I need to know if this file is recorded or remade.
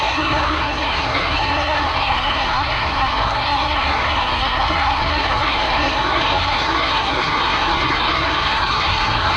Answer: remade